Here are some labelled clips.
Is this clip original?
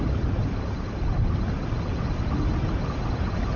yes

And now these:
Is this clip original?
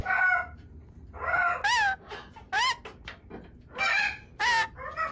yes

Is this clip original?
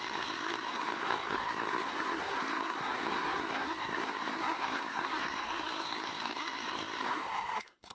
no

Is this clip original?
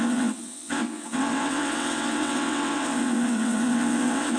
no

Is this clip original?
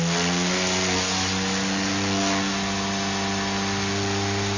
yes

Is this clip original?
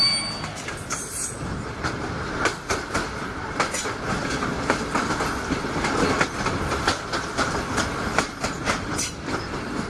yes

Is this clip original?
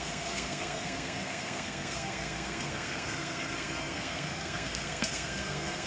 no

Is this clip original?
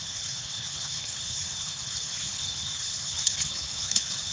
no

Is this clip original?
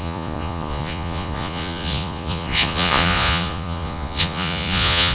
no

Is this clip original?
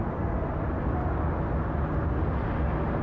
yes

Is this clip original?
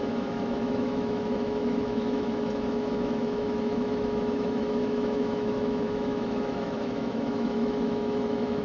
no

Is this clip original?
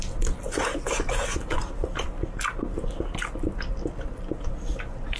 yes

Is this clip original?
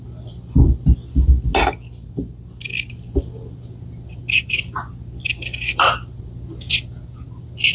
yes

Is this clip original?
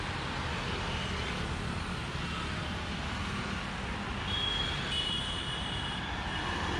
yes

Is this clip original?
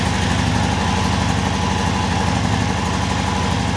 yes